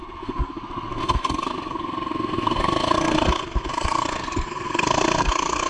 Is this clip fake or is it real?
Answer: fake